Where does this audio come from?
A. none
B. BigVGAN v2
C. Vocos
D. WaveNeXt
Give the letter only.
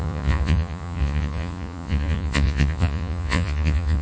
C